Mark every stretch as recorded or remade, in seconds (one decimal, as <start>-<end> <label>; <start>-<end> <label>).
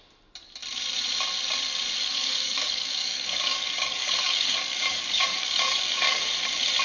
0.0-2.1 recorded; 2.1-6.2 remade; 6.2-6.8 recorded